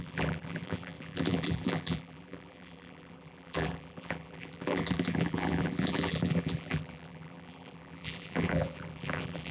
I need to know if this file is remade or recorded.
remade